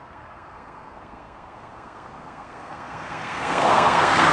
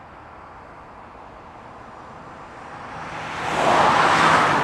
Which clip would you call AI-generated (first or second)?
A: first